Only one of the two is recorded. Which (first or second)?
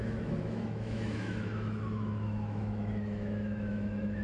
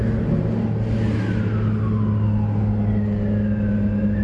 second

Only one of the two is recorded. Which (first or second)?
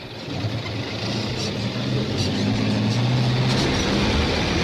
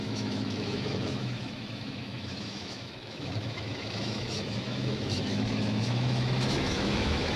first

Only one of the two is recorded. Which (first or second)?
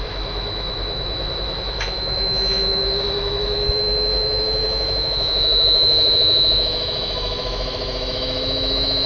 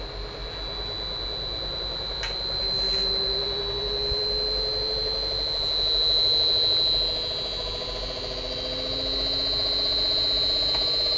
second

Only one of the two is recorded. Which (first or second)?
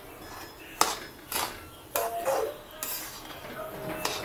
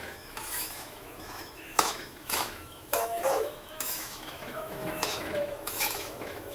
first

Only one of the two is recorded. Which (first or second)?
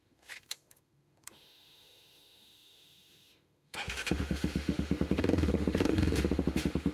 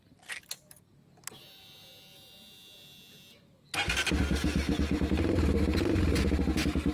second